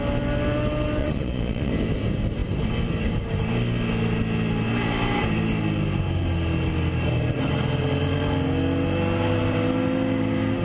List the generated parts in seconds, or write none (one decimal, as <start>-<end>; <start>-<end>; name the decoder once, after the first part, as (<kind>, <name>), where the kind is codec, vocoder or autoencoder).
1.0-1.7 (vocoder, Vocos)